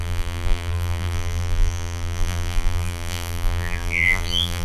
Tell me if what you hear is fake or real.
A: fake